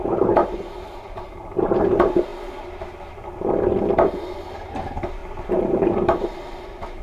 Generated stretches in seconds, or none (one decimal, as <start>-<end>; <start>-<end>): 5.2-6.2